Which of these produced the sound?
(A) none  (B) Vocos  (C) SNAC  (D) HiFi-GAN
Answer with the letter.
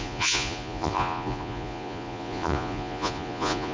B